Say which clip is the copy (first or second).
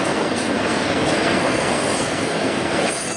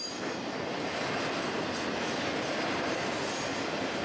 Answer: first